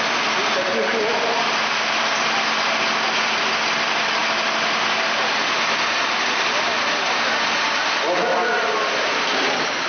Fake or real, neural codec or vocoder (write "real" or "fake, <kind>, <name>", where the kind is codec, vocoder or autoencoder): real